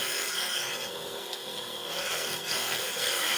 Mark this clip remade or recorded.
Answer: remade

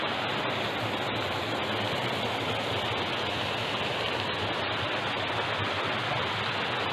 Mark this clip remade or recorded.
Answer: recorded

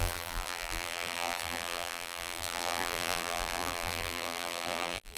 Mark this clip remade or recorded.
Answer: remade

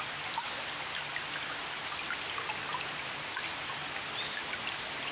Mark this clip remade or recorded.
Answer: recorded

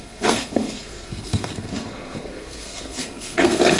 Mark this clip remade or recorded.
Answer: remade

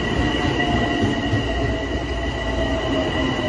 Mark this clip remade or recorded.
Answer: recorded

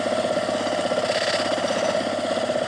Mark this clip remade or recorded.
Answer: recorded